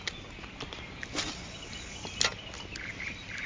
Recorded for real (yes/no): yes